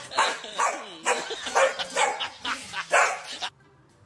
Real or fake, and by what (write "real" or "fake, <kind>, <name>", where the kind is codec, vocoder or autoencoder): real